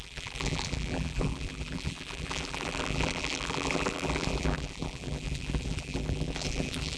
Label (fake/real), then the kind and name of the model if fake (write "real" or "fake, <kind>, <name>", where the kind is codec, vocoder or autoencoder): fake, vocoder, BigVGAN v2